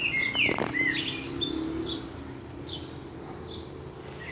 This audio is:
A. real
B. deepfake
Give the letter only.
A